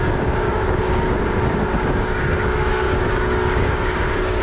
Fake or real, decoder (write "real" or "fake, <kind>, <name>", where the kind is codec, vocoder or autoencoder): fake, codec, DAC